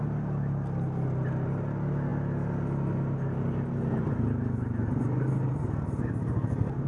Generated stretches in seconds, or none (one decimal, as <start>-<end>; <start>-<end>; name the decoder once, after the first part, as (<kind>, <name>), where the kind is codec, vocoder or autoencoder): none